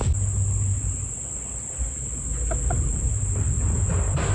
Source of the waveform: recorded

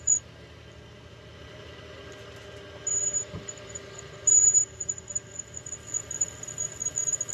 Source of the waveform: recorded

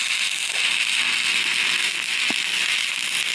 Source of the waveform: recorded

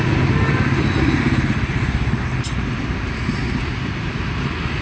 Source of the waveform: recorded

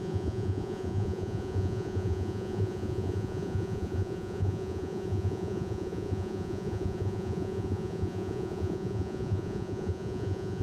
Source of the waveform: remade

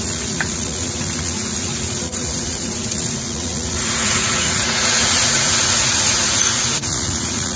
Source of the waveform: remade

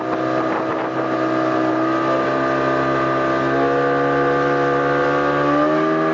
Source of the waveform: recorded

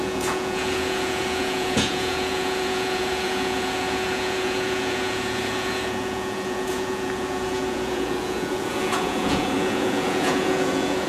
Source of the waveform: remade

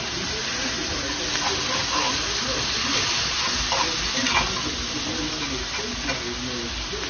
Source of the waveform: recorded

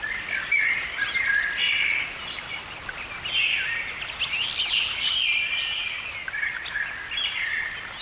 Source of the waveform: recorded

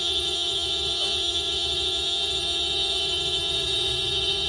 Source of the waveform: remade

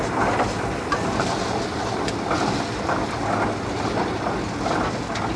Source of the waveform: recorded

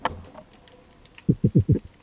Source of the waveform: recorded